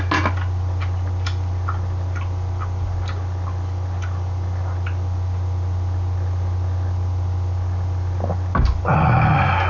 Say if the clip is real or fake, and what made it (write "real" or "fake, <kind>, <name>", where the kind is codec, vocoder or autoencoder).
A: real